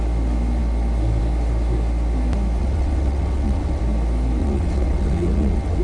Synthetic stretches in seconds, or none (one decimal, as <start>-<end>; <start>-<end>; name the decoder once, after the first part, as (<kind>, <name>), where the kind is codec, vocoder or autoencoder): 2.6-3.8 (vocoder, WaveNeXt); 4.4-5.8